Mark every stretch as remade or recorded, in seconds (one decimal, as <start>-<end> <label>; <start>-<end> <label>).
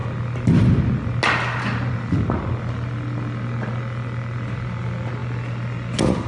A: 0.0-6.3 recorded